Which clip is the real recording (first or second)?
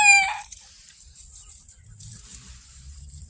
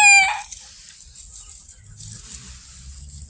second